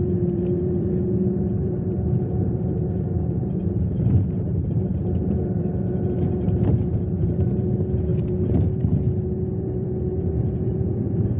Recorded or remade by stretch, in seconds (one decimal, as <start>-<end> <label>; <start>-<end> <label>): 0.0-8.1 remade; 8.1-9.6 recorded; 9.6-11.4 remade